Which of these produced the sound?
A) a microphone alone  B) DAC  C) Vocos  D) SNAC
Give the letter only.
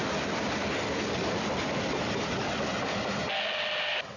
A